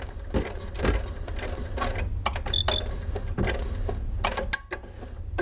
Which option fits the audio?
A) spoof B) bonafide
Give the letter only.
B